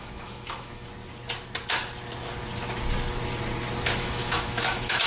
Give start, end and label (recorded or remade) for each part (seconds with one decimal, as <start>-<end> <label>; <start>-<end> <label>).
0.0-0.9 remade; 0.9-4.0 recorded; 4.0-5.1 remade